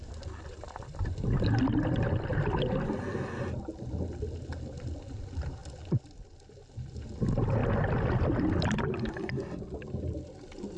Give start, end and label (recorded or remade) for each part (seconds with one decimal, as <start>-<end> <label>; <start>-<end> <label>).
0.0-10.8 recorded